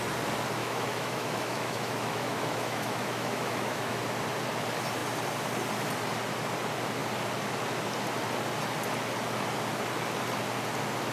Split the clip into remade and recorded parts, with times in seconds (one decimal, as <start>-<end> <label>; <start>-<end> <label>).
0.0-0.6 recorded; 0.6-4.0 remade; 4.0-11.1 recorded